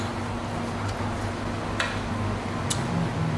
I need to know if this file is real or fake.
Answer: real